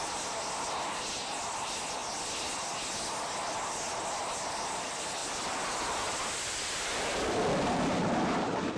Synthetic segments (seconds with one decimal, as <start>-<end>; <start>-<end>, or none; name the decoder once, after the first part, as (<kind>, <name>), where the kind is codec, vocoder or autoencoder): 5.2-8.1 (vocoder, BigVGAN v2)